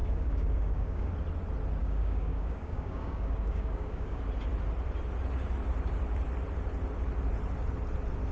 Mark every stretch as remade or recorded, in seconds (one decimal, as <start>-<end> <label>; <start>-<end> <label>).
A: 0.0-1.1 remade; 1.1-1.8 recorded; 1.8-4.2 remade; 4.2-8.3 recorded